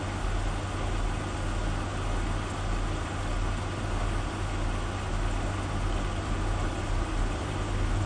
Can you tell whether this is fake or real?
real